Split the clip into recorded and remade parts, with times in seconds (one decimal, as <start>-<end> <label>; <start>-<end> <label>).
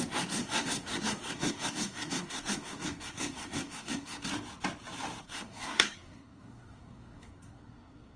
0.0-4.3 remade; 4.3-5.2 recorded; 5.2-8.2 remade